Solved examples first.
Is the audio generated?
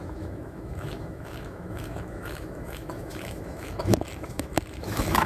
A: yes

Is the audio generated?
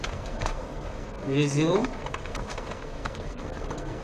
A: yes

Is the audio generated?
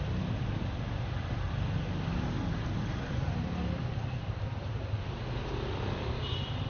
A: no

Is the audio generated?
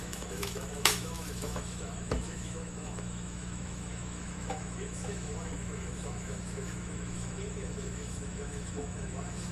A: yes